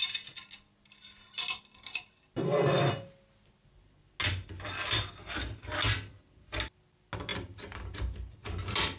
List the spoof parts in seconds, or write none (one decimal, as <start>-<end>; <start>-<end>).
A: none